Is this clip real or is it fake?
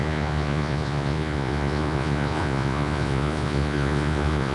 fake